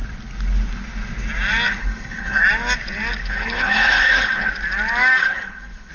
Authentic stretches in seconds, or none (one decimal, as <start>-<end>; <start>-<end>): 0.0-1.8; 2.4-3.2; 4.5-5.2